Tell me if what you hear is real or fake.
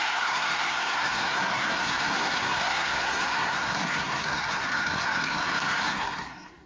fake